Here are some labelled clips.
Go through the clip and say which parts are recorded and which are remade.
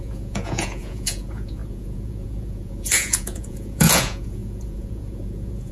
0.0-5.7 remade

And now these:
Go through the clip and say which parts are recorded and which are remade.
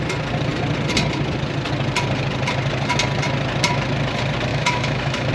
0.0-4.5 recorded; 4.5-5.3 remade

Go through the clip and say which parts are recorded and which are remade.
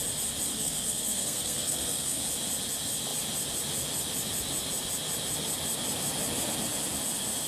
0.0-0.5 recorded; 0.5-2.2 remade; 2.2-7.5 recorded